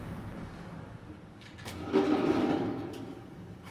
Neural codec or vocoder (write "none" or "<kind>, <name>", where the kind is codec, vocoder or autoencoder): codec, DAC